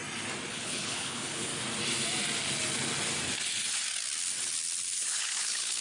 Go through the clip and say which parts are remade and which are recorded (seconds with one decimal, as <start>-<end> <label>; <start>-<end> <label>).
0.0-0.5 recorded; 0.5-1.5 remade; 1.5-5.0 recorded; 5.0-5.8 remade